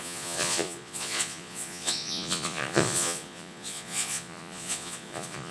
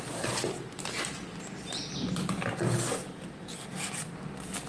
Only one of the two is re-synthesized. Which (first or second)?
first